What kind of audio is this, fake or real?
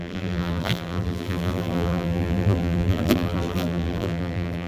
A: fake